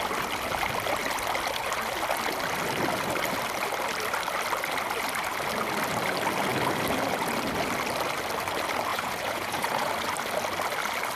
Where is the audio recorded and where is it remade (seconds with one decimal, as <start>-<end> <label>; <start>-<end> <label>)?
0.0-8.9 recorded; 8.9-9.9 remade; 9.9-11.1 recorded